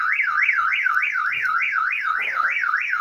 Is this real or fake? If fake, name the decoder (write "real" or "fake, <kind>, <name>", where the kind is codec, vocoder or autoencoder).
fake, codec, DAC